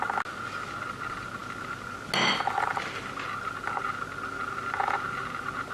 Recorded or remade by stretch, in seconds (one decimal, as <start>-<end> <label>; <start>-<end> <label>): 0.0-5.7 recorded